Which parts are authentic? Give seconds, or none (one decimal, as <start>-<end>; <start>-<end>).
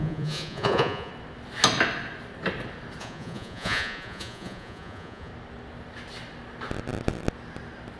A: 1.1-3.0; 5.3-8.0